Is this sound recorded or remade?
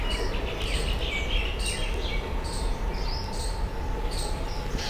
recorded